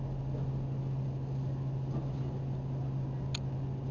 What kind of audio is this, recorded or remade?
recorded